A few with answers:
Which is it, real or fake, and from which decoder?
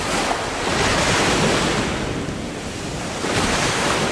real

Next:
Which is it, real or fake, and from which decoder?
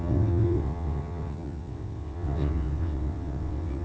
fake, vocoder, WaveNeXt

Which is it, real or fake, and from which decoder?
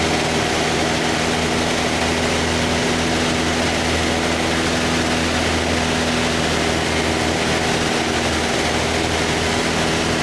real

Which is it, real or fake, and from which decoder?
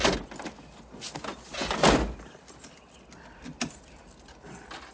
real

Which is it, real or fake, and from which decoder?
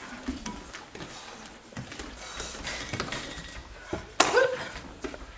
real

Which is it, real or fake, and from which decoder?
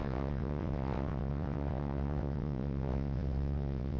fake, vocoder, WaveNeXt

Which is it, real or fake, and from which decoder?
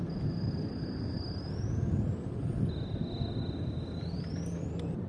real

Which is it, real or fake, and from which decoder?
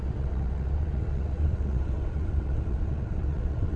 fake, vocoder, WaveNeXt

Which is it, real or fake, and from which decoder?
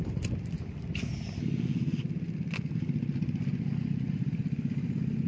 real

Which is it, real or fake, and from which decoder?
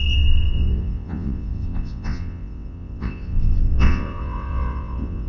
fake, vocoder, WaveNeXt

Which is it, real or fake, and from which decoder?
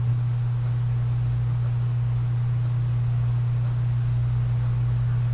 real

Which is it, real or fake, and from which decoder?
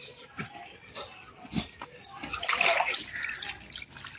real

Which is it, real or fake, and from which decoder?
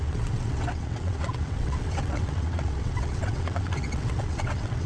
fake, vocoder, WaveNeXt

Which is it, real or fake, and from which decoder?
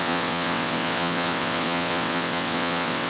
fake, vocoder, WaveNeXt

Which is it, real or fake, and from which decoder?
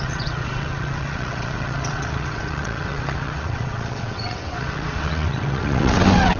fake, vocoder, WaveNeXt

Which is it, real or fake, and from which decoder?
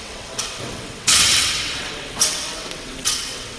fake, vocoder, WaveNeXt